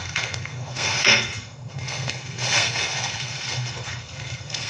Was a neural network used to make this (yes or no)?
yes